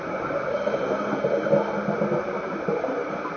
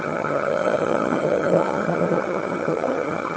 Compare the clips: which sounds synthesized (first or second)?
second